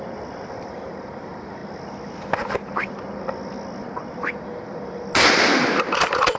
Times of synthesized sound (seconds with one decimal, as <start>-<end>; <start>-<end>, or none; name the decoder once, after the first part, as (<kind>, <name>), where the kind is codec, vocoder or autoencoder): none